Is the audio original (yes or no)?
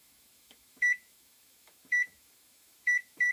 no